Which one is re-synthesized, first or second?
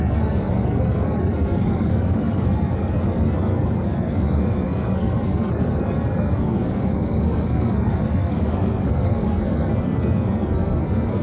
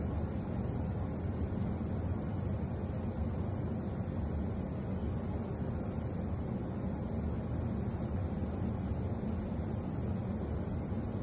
first